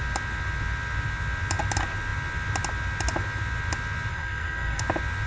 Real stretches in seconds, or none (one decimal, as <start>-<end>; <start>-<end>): 0.0-4.1; 4.8-5.3